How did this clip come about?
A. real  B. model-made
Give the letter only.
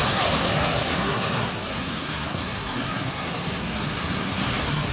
B